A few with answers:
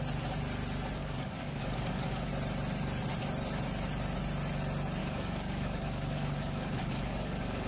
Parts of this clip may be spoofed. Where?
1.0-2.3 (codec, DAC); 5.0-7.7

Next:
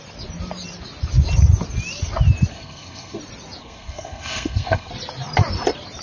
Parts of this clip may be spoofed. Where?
2.5-3.2 (codec, SNAC); 3.6-4.9

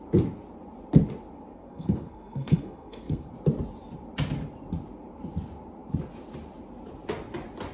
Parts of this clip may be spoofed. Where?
1.5-3.3 (codec, SNAC)

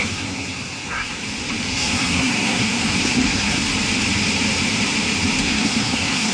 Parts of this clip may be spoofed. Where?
0.0-1.2 (codec, SNAC); 1.7-3.6; 5.4-6.3

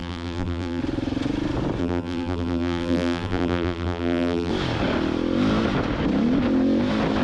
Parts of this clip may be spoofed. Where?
0.0-0.8 (vocoder, BigVGAN v2); 1.8-4.5

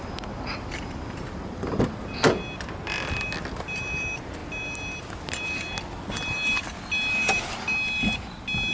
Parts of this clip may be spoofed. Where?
none

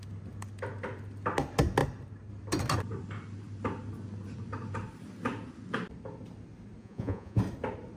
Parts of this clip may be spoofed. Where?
6.8-7.4 (vocoder, Vocos)

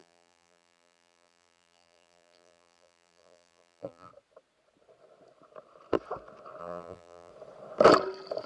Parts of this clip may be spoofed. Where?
0.0-4.1 (vocoder, BigVGAN v2); 6.6-7.3